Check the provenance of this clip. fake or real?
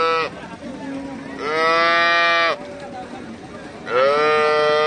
real